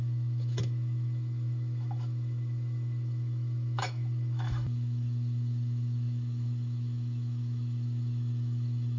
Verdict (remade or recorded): remade